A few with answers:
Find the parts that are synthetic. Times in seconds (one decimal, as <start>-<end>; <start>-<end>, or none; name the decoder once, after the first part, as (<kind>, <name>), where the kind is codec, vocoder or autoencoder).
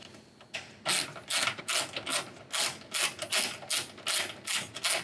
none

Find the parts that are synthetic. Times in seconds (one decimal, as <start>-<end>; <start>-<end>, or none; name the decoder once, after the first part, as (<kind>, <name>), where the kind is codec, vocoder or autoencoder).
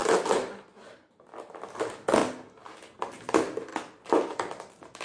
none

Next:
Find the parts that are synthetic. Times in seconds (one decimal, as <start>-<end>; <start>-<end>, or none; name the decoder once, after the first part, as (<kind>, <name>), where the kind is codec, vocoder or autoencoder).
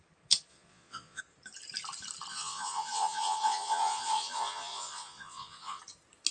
0.5-1.2 (vocoder, Vocos); 2.3-5.8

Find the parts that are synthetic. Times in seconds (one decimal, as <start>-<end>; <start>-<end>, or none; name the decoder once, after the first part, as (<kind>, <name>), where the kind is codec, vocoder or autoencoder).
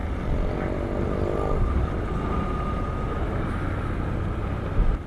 none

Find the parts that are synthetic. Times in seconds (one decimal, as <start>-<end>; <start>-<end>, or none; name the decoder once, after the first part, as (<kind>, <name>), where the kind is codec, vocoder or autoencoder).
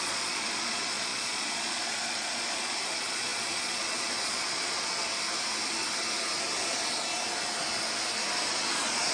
0.0-5.1 (vocoder, Vocos); 8.5-9.1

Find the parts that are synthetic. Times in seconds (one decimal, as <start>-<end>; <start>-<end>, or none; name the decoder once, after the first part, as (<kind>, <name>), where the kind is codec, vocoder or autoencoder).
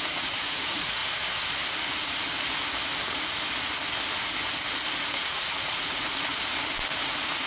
0.0-1.0 (vocoder, Vocos); 5.0-6.3; 7.0-7.5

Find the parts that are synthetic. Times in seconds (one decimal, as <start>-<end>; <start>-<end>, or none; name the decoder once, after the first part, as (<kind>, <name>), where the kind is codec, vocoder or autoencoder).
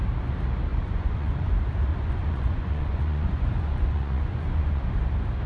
0.7-1.5 (vocoder, Vocos); 1.9-5.0